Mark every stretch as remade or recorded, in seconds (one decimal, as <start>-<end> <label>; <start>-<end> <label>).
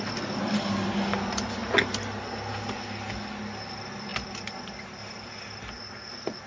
0.0-6.5 recorded